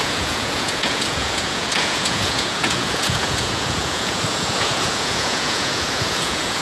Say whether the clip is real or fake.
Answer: fake